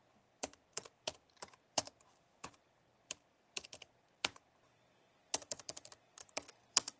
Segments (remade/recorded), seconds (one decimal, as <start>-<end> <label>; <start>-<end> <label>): 0.0-7.0 remade